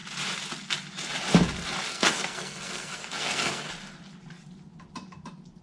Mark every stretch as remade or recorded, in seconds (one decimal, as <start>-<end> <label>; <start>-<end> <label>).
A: 0.0-1.9 recorded; 1.9-3.7 remade; 3.7-5.6 recorded